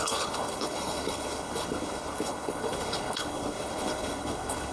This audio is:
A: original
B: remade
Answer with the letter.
B